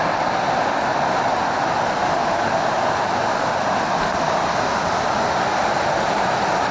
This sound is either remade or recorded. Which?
recorded